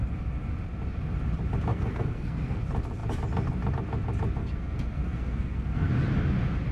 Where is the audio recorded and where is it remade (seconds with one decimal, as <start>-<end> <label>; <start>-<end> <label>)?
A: 0.0-1.7 recorded; 1.7-2.6 remade; 2.6-4.4 recorded; 4.4-5.9 remade; 5.9-6.7 recorded